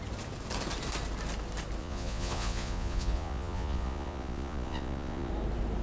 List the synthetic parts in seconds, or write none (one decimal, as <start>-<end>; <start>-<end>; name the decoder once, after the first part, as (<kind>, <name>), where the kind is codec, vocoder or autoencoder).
1.8-5.3 (vocoder, Vocos)